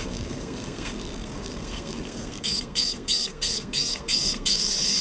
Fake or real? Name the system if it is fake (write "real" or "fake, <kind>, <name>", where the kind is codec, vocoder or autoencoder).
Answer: fake, codec, SNAC